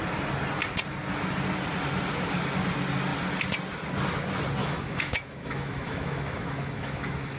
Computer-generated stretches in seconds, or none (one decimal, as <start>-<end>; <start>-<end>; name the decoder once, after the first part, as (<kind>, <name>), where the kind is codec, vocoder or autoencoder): 4.6-7.4 (autoencoder, DAC-VAE)